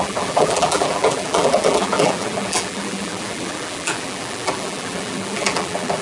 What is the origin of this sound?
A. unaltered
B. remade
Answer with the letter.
B